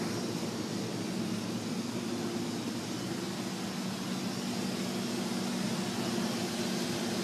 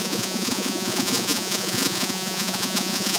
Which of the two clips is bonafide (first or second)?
first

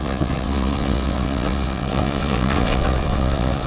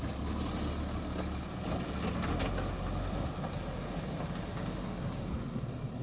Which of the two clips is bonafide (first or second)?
second